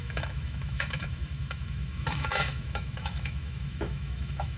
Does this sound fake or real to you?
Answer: fake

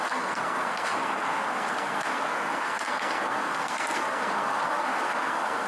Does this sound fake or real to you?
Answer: fake